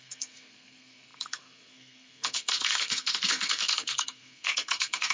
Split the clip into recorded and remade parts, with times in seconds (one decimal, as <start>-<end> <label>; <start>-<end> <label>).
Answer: 0.0-5.1 remade